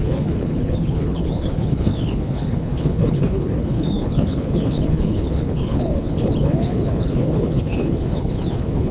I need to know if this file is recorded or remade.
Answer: remade